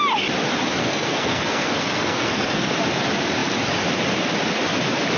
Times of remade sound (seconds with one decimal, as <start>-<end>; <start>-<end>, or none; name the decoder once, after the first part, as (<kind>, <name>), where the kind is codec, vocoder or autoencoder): 0.8-2.7 (codec, SNAC)